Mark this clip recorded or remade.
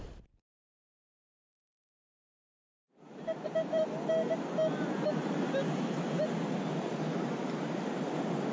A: recorded